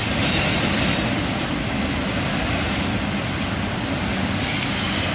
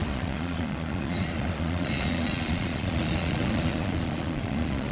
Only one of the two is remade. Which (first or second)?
second